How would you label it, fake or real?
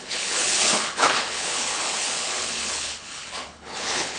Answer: fake